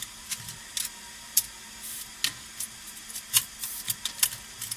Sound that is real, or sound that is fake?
real